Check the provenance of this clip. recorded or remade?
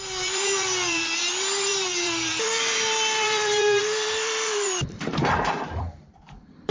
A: remade